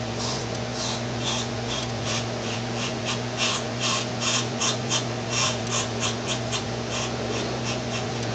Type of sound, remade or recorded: remade